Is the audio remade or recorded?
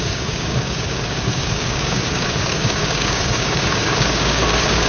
remade